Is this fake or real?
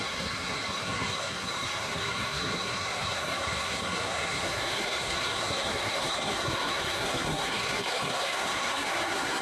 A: fake